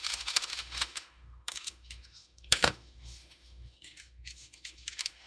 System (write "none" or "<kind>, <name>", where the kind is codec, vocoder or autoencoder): autoencoder, DAC-VAE